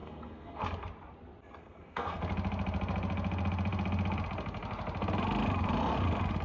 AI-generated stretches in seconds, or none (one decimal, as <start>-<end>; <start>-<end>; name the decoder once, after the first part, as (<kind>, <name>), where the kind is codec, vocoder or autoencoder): 0.0-0.6 (codec, SNAC); 1.6-2.2

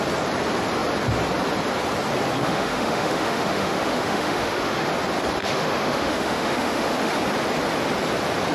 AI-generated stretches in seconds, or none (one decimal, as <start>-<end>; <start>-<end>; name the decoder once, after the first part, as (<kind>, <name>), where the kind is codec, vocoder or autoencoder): 2.4-4.9 (autoencoder, DAC-VAE); 5.4-7.2

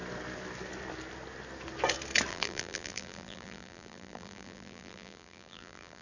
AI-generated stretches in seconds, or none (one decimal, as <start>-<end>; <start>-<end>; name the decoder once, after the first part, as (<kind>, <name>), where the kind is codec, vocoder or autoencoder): 2.3-6.0 (vocoder, BigVGAN v2)

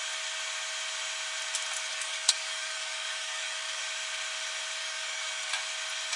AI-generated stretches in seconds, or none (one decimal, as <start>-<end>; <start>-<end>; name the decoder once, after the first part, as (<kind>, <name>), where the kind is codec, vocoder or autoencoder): 1.9-3.8 (codec, DAC); 4.8-5.5

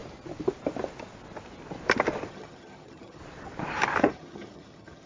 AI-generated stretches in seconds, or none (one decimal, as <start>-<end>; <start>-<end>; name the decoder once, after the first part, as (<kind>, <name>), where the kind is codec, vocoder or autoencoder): 2.3-3.2 (vocoder, HiFi-GAN); 4.0-5.1

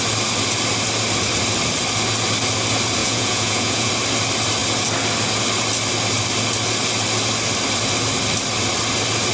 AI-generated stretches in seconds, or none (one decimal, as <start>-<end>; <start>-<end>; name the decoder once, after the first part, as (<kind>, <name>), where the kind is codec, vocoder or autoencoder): 3.0-3.9 (vocoder, Vocos)